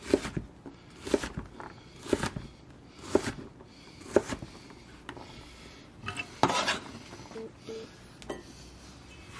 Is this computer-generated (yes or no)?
no